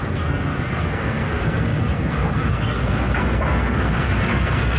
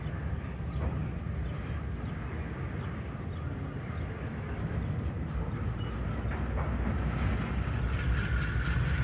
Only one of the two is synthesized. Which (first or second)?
first